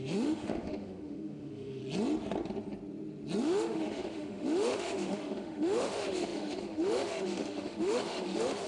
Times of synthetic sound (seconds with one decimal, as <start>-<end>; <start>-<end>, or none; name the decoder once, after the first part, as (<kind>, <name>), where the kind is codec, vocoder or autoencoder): 0.0-1.8 (autoencoder, DAC-VAE); 3.4-8.7